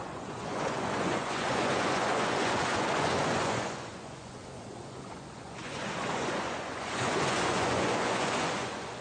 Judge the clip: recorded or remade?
remade